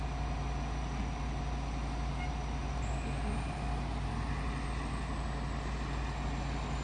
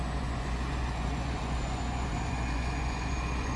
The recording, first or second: first